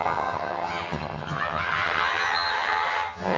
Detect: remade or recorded remade